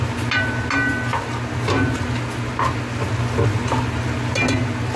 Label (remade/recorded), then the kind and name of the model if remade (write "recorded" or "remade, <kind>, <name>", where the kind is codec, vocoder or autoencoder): recorded